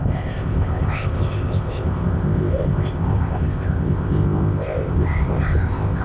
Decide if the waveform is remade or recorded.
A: remade